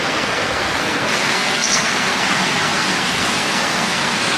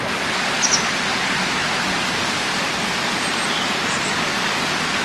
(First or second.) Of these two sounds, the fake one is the first